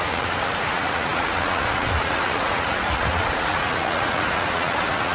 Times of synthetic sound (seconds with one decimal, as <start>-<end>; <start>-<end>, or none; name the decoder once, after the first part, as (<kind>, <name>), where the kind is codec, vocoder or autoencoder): 0.0-5.1 (vocoder, Vocos)